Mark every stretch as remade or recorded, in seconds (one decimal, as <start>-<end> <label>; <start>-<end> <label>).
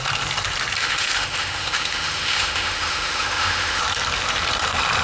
0.0-0.8 recorded; 0.8-3.8 remade; 3.8-5.0 recorded